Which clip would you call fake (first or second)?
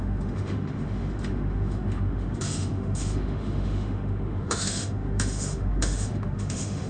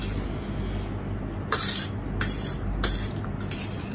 first